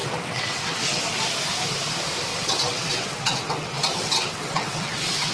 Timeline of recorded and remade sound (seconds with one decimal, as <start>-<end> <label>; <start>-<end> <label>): 0.0-1.0 remade; 1.0-2.3 recorded; 2.3-5.3 remade